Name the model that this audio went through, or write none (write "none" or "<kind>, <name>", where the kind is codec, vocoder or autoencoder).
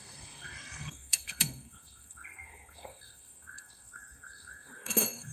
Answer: codec, SNAC